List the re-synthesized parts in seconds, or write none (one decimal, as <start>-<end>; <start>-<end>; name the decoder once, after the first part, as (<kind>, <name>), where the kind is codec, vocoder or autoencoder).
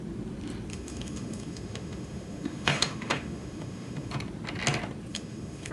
0.7-4.1 (autoencoder, DAC-VAE); 5.1-5.7